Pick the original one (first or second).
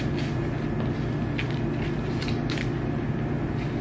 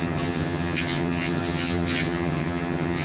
first